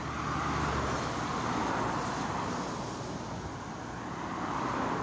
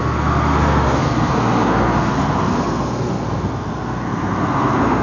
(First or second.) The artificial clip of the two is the second